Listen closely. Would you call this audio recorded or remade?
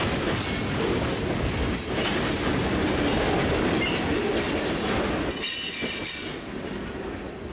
recorded